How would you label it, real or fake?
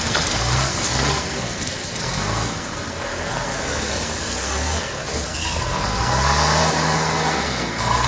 fake